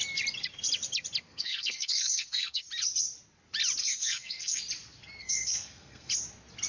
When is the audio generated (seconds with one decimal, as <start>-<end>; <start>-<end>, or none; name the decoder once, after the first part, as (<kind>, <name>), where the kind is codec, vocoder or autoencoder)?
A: 1.3-2.6 (codec, SNAC); 3.8-4.6; 5.2-6.1